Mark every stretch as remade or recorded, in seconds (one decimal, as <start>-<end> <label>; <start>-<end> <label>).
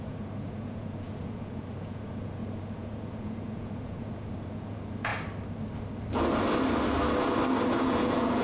0.0-5.1 remade; 5.1-7.7 recorded; 7.7-8.4 remade